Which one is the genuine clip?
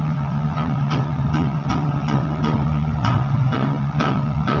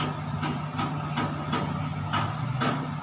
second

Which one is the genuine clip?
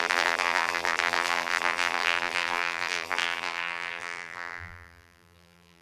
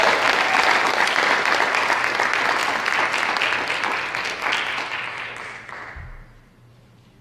second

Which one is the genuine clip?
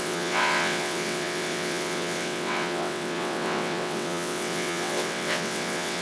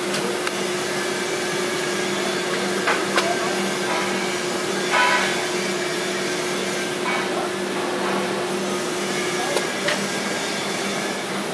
second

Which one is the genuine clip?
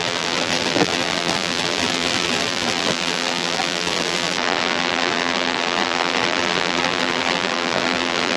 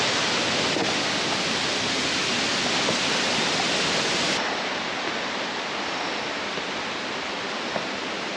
second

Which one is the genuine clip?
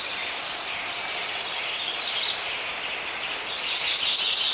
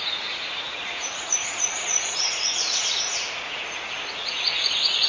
first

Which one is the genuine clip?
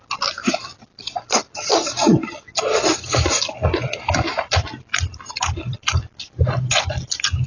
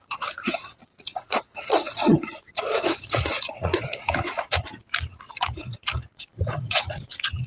first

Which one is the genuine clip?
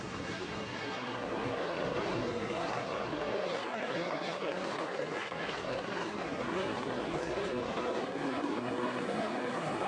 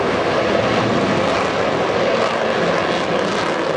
second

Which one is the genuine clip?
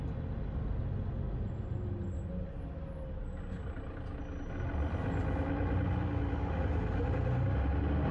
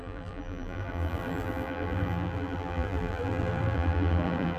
first